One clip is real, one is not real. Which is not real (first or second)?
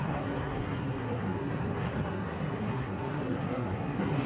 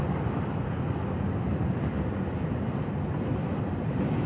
first